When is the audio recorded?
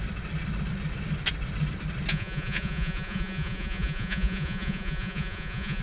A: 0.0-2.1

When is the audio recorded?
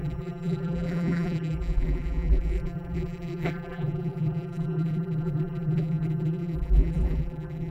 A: none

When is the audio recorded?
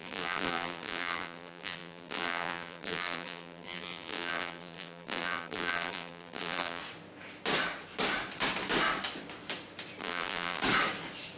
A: 6.8-10.0; 10.6-11.4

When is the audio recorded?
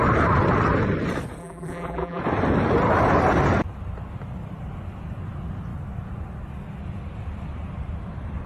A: 0.0-1.4; 2.2-8.5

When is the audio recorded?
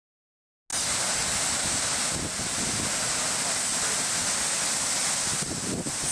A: 0.0-6.1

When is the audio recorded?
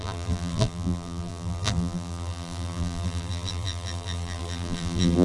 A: none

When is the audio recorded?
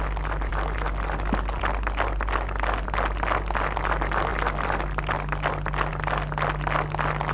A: 0.0-7.3